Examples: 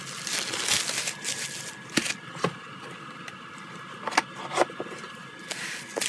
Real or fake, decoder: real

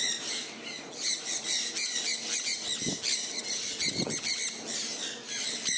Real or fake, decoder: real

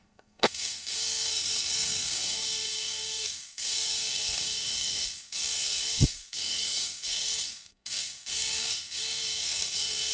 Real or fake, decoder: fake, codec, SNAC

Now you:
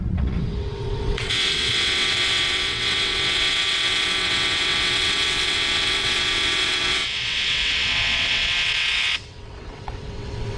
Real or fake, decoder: fake, vocoder, WaveNeXt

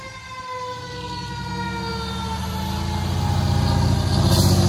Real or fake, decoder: real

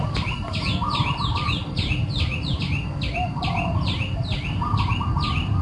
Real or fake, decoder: fake, vocoder, BigVGAN v2